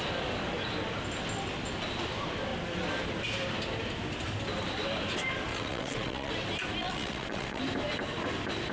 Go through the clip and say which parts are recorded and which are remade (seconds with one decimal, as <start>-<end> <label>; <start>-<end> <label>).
0.0-5.5 recorded; 5.5-6.3 remade; 6.3-6.8 recorded; 6.8-7.6 remade; 7.6-8.7 recorded